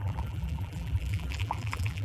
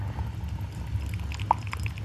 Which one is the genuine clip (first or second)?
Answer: second